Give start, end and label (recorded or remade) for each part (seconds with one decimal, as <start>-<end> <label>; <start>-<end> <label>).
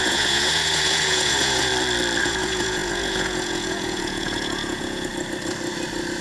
0.0-1.7 remade; 1.7-2.2 recorded; 2.2-5.1 remade; 5.1-6.2 recorded